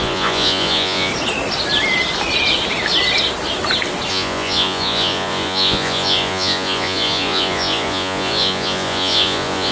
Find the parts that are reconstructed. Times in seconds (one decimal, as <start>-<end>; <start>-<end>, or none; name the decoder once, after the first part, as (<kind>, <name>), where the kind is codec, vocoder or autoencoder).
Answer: 0.0-1.1 (vocoder, Vocos); 4.1-9.7